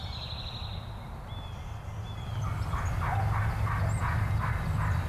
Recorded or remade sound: recorded